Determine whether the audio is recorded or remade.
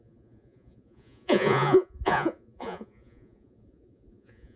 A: remade